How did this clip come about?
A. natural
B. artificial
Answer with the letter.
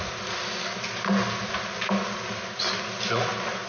A